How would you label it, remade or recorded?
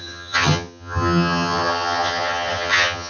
remade